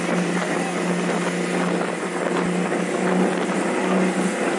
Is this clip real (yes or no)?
yes